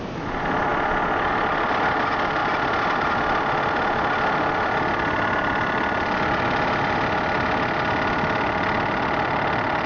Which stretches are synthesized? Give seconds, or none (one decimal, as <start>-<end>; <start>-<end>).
none